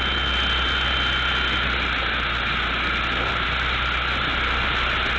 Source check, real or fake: real